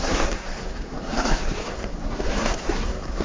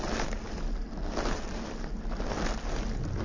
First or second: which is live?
second